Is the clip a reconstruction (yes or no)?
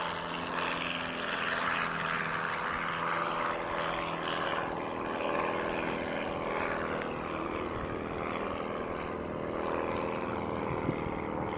no